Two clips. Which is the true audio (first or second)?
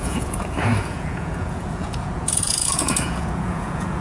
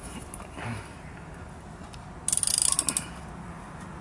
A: second